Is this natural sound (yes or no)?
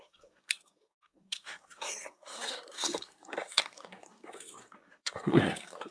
no